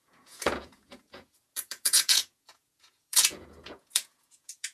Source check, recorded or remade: remade